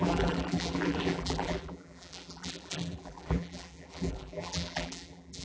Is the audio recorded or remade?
remade